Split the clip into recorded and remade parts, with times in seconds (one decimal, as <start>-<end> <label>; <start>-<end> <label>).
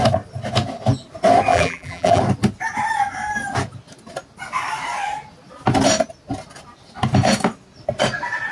0.0-1.5 recorded; 1.5-2.2 remade; 2.2-8.5 recorded